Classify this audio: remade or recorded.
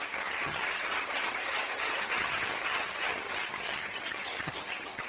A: remade